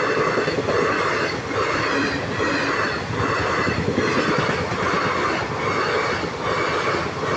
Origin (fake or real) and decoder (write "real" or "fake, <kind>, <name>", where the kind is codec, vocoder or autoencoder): real